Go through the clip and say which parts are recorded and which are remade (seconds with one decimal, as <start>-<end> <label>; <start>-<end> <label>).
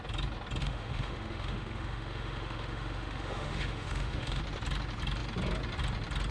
0.0-0.6 recorded; 0.6-4.4 remade; 4.4-6.3 recorded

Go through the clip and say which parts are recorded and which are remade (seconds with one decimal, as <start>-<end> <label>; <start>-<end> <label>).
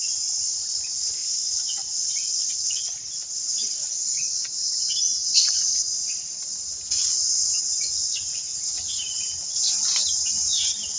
0.0-1.8 recorded; 1.8-4.3 remade; 4.3-5.3 recorded; 5.3-5.8 remade; 5.8-11.0 recorded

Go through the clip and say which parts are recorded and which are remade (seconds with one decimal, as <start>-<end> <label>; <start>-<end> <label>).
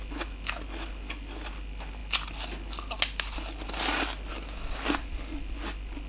0.0-6.1 recorded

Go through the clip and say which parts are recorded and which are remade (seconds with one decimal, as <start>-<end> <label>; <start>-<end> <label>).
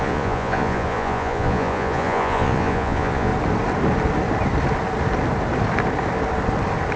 0.0-3.3 remade; 3.3-7.0 recorded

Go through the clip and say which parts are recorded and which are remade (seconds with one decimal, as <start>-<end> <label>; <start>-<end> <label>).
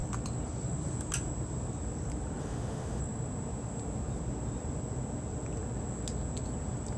0.0-2.4 recorded; 2.4-3.0 remade; 3.0-7.0 recorded